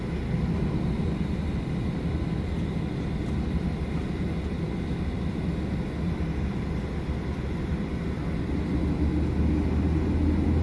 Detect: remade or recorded recorded